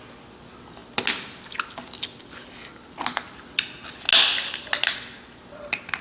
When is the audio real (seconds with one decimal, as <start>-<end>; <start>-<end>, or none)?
0.0-6.0